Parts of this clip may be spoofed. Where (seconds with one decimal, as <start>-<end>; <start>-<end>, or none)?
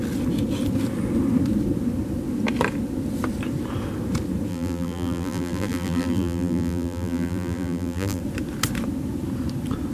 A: 4.5-8.2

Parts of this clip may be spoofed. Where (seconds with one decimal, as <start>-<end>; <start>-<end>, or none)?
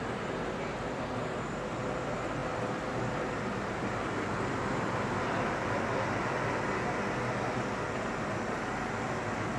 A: 2.4-5.4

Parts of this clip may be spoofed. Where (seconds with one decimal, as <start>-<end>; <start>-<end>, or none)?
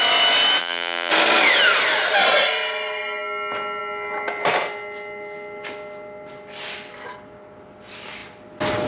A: 0.6-1.1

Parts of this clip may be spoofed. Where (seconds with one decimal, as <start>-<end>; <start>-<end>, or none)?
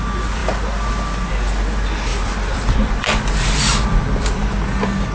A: 2.1-3.1; 3.9-4.5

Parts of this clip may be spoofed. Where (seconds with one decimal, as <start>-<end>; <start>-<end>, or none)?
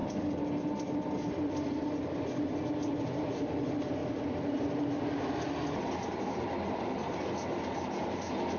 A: 0.0-1.8; 2.8-3.6; 4.0-5.0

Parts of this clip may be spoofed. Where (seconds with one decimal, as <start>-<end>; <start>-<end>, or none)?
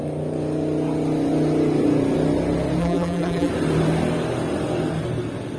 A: 2.8-3.5